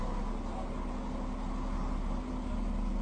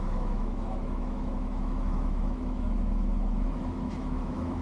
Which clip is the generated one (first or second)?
second